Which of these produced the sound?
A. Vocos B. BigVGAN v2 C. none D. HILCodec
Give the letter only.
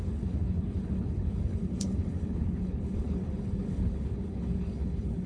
D